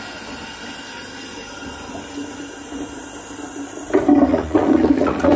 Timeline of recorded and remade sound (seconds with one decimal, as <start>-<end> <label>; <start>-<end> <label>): 0.0-4.3 recorded; 4.3-5.4 remade